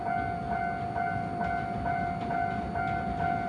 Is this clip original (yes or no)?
yes